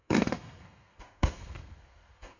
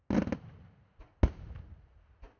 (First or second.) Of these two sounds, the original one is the second